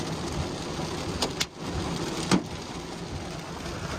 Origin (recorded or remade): recorded